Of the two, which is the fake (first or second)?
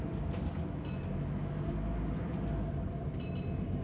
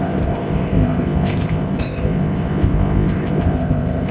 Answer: second